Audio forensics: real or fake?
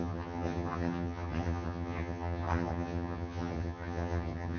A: fake